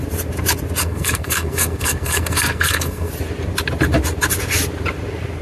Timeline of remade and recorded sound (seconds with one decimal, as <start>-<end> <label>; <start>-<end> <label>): 0.0-0.8 recorded; 0.8-3.1 remade; 3.1-5.4 recorded